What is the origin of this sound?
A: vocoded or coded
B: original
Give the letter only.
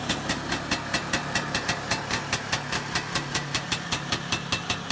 B